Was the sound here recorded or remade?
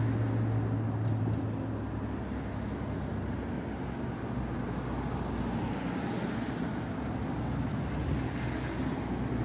recorded